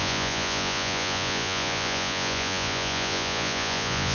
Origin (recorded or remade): remade